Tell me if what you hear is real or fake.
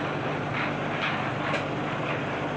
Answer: real